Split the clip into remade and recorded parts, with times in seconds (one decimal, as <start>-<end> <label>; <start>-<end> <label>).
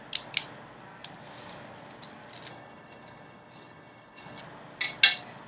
0.0-2.5 recorded; 2.5-4.4 remade; 4.4-5.5 recorded